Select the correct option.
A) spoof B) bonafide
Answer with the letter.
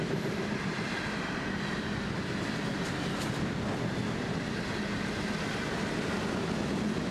B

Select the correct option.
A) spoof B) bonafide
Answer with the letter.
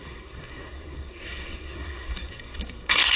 A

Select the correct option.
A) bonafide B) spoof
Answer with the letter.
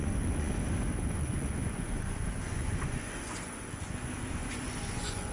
B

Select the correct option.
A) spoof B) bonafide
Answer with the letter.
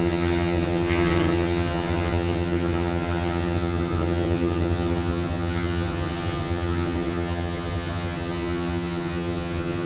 A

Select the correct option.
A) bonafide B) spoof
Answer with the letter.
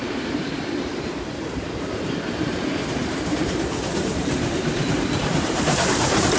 B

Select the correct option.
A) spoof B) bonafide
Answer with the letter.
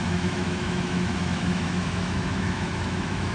A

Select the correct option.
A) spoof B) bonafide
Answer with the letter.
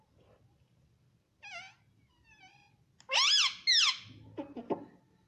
B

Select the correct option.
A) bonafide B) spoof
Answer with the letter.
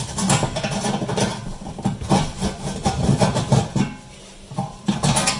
A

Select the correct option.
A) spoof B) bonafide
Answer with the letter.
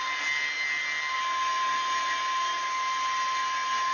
B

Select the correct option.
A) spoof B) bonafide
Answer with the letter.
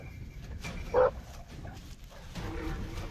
A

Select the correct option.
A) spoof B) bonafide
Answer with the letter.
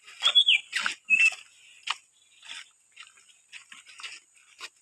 B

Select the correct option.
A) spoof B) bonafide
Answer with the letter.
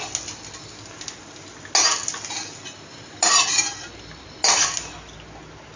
B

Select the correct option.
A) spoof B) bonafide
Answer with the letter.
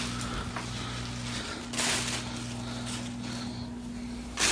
B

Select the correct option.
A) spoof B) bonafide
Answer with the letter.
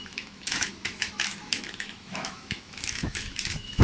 A